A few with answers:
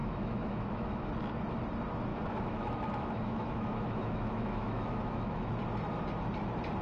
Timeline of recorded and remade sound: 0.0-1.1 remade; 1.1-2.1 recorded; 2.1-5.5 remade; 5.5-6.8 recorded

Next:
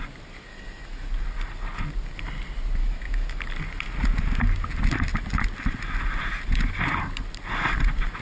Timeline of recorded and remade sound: 0.0-0.5 recorded; 0.5-1.1 remade; 1.1-2.8 recorded; 2.8-3.4 remade; 3.4-8.2 recorded